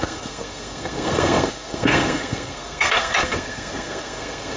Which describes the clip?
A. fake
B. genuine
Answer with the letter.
A